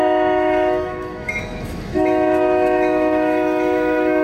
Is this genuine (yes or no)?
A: no